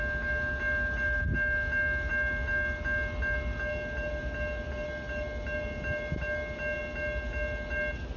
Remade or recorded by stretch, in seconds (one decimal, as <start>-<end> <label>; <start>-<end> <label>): 0.0-8.2 recorded